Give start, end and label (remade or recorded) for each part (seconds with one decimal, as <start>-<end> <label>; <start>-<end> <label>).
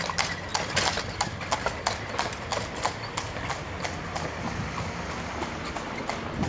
0.0-6.5 recorded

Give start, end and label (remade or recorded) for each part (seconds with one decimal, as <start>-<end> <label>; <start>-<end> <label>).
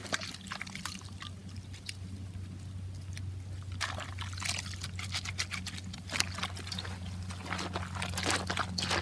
0.0-9.0 recorded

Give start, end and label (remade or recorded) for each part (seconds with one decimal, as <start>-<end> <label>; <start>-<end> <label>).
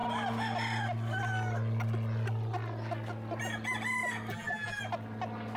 0.0-4.3 recorded; 4.3-4.8 remade; 4.8-5.6 recorded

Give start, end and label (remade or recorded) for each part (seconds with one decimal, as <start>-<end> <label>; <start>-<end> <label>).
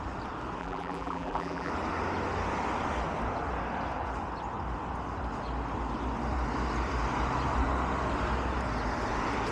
0.0-0.6 recorded; 0.6-1.7 remade; 1.7-9.5 recorded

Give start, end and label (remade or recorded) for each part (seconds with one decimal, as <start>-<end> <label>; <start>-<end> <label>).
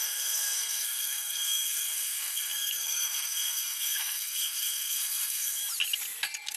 0.0-5.6 remade; 5.6-6.6 recorded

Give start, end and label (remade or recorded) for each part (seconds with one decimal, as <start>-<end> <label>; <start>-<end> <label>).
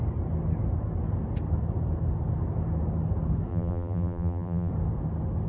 0.0-3.5 recorded; 3.5-4.7 remade; 4.7-5.5 recorded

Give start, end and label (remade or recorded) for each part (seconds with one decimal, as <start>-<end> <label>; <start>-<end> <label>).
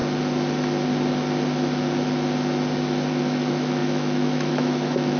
0.0-3.1 recorded; 3.1-5.2 remade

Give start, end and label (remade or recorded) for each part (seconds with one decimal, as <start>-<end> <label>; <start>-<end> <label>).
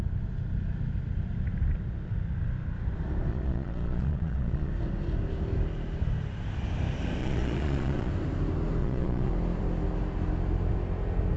0.0-3.3 recorded; 3.3-4.7 remade; 4.7-7.2 recorded; 7.2-8.1 remade; 8.1-8.8 recorded; 8.8-9.3 remade; 9.3-11.4 recorded